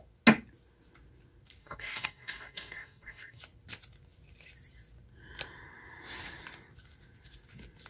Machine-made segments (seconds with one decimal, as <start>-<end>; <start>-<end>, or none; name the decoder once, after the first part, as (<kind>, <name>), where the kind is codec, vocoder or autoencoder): 1.6-3.4 (codec, DAC)